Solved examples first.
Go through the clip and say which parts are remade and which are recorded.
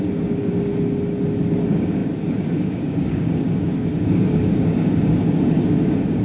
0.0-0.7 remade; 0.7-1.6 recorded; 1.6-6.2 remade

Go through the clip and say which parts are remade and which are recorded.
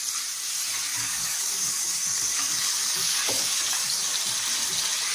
0.0-0.9 recorded; 0.9-4.0 remade; 4.0-5.1 recorded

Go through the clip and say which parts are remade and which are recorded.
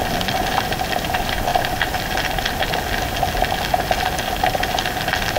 0.0-5.4 recorded